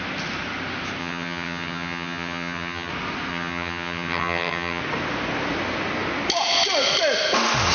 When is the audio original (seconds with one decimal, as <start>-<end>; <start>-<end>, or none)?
0.0-1.0; 2.9-3.3; 4.8-7.7